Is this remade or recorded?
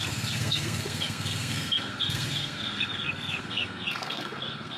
remade